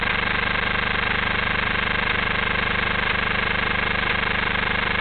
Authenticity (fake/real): real